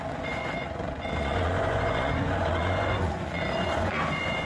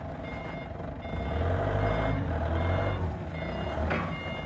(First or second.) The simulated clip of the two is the first